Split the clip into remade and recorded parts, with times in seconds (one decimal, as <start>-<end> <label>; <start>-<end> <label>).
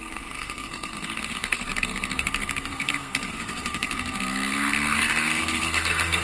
0.0-6.2 remade